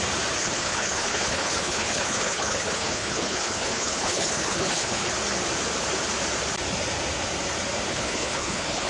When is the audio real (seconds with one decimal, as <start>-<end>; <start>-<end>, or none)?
0.0-0.4; 5.1-7.9